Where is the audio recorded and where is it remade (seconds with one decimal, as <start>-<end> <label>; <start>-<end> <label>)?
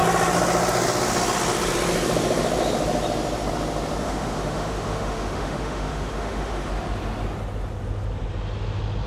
0.0-4.0 recorded; 4.0-6.7 remade; 6.7-9.1 recorded